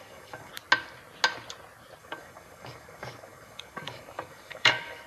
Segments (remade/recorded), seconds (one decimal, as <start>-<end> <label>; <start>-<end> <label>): 0.0-0.5 remade; 0.5-2.0 recorded; 2.0-5.1 remade

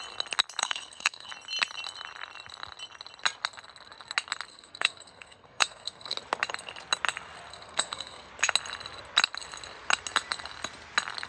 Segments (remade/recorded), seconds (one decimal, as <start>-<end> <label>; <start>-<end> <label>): 0.0-0.6 recorded; 0.6-1.3 remade; 1.3-4.5 recorded; 4.5-6.1 remade; 6.1-7.5 recorded; 7.5-8.3 remade; 8.3-11.3 recorded

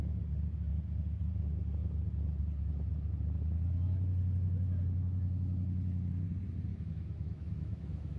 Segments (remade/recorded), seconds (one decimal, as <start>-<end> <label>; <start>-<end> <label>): 0.0-6.7 recorded; 6.7-8.2 remade

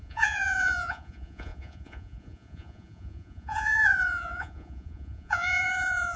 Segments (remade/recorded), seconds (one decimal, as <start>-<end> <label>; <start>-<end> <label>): 0.0-6.2 remade

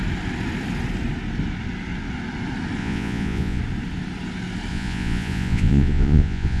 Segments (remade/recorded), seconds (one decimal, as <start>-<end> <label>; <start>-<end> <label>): 0.0-2.8 recorded; 2.8-3.6 remade; 3.6-4.7 recorded; 4.7-6.6 remade

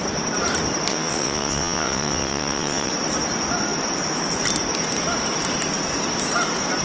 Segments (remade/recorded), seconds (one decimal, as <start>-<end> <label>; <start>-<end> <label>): 0.0-0.9 recorded; 0.9-2.9 remade; 2.9-6.8 recorded